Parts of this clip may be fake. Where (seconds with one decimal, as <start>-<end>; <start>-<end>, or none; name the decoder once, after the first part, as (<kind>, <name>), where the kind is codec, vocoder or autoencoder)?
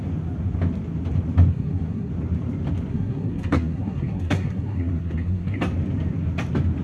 1.5-2.1 (codec, SNAC); 2.9-5.6